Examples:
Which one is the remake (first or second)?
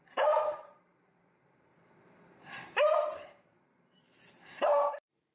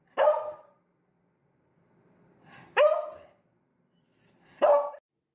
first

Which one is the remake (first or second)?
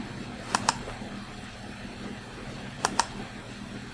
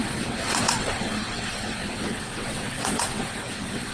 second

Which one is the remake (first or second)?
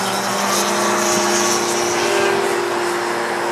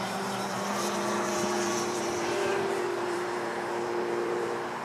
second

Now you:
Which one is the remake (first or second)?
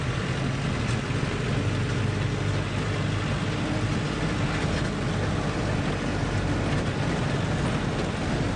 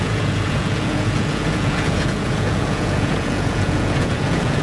second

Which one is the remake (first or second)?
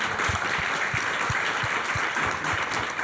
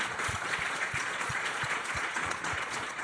second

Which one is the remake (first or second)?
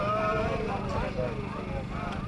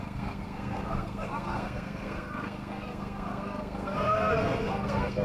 second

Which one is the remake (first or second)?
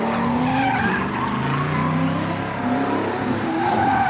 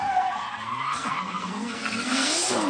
second